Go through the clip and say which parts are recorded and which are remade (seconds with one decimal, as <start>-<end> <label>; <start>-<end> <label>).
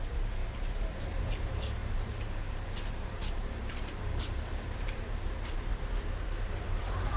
0.0-7.2 remade